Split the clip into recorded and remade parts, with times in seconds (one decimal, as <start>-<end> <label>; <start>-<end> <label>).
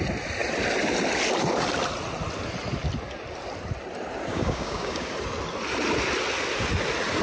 0.0-4.3 recorded; 4.3-5.1 remade; 5.1-7.2 recorded